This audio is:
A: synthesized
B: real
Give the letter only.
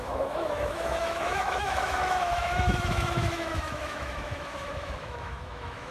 A